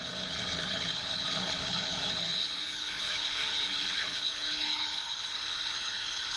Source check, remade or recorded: remade